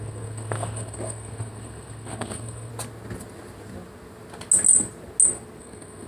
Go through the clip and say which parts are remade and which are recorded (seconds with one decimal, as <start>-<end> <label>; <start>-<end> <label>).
0.0-2.7 remade; 2.7-5.6 recorded; 5.6-6.1 remade